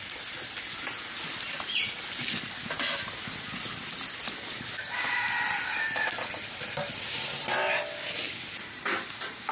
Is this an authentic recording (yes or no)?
yes